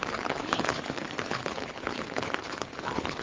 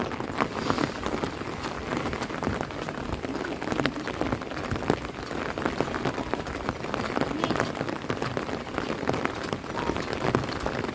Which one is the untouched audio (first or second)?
second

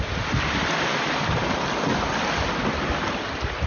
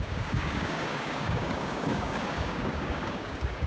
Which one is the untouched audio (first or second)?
first